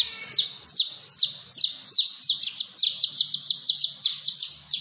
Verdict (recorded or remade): recorded